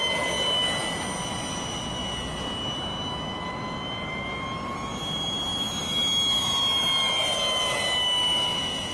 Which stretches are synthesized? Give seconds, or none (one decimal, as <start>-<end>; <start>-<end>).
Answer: none